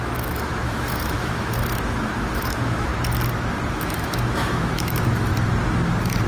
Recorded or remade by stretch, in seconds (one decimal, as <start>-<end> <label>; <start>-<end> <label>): 0.0-2.9 remade; 2.9-3.7 recorded; 3.7-5.3 remade; 5.3-6.3 recorded